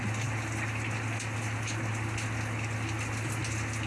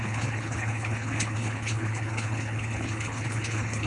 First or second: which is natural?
first